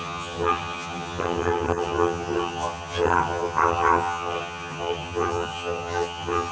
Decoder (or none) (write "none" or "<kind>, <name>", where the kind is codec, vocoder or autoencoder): vocoder, HiFi-GAN